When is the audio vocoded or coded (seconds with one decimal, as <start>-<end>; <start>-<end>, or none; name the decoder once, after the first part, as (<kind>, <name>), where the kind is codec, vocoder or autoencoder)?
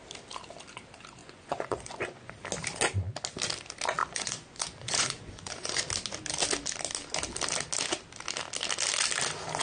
1.2-2.3 (vocoder, Vocos); 4.0-5.8